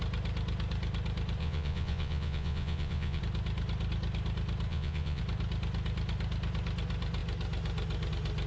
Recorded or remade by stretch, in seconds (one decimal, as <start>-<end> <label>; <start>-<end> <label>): 0.0-1.4 recorded; 1.4-3.2 remade; 3.2-4.7 recorded; 4.7-5.2 remade; 5.2-8.5 recorded